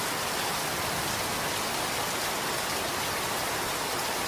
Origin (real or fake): real